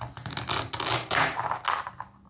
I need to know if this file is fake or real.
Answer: real